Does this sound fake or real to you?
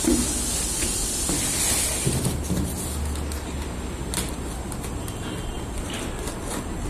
real